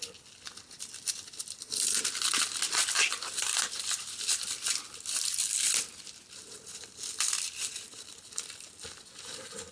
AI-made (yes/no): no